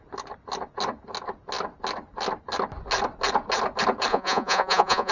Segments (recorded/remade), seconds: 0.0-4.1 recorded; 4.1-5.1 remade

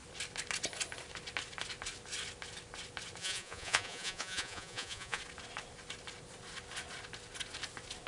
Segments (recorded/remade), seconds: 0.0-3.2 recorded; 3.2-5.2 remade; 5.2-8.1 recorded